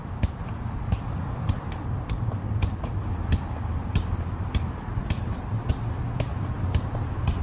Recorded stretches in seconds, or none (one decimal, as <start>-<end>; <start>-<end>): 3.1-5.0; 5.7-6.3